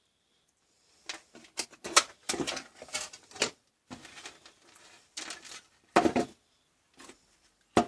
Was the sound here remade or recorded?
recorded